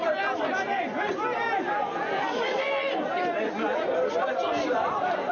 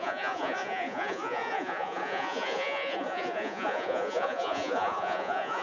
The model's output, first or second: second